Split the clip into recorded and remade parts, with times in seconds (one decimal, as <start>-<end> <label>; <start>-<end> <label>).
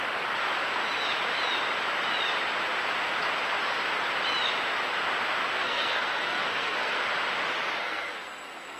0.0-5.6 recorded; 5.6-7.0 remade; 7.0-7.8 recorded; 7.8-8.8 remade